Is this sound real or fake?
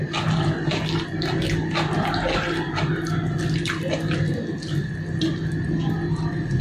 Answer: real